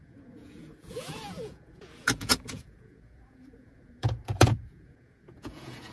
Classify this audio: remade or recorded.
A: remade